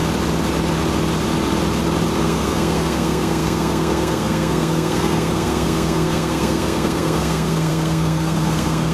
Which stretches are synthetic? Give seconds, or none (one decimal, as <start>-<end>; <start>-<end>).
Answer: 2.2-8.9